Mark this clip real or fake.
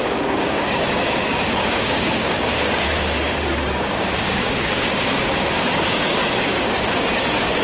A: fake